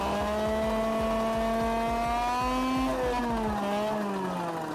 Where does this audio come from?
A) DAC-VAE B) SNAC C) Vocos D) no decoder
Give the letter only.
D